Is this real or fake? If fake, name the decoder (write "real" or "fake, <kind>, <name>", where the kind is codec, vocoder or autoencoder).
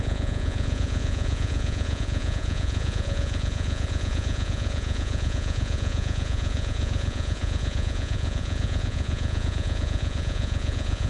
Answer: fake, vocoder, Vocos